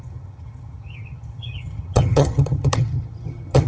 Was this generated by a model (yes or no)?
yes